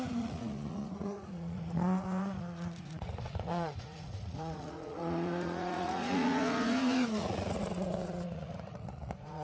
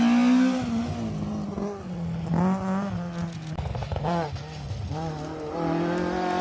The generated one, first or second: first